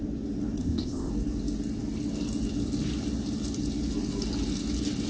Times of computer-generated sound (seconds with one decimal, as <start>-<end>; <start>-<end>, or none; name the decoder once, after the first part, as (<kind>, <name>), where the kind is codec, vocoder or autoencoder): 0.6-1.1 (codec, ZipCodec)